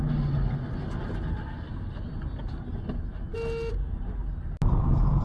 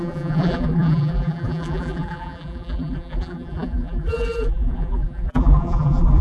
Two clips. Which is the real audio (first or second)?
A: first